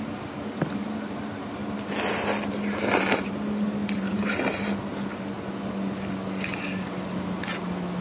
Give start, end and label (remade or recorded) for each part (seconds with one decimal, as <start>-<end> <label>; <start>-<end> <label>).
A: 0.0-8.0 recorded